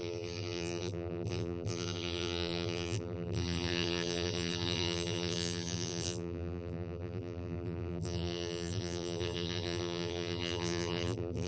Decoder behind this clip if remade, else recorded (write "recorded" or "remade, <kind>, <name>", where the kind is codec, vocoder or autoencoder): remade, vocoder, BigVGAN v2